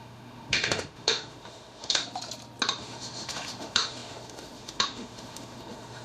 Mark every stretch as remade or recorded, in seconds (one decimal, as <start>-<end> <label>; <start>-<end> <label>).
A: 0.0-2.0 remade; 2.0-2.8 recorded; 2.8-6.0 remade